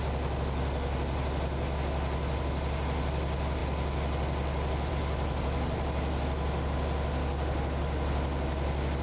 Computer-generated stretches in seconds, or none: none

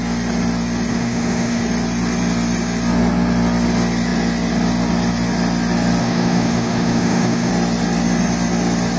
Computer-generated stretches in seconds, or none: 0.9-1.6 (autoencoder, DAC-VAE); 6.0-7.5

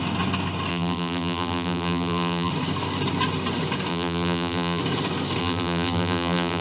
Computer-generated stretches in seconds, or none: 0.7-2.5 (vocoder, BigVGAN v2); 3.9-4.8; 5.4-6.6